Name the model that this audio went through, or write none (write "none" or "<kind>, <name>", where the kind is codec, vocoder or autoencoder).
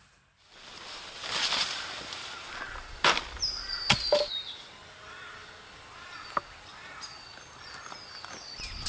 none